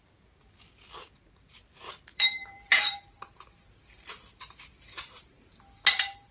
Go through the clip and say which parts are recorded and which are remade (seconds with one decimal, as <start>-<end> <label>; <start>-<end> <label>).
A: 0.0-2.1 recorded; 2.1-6.3 remade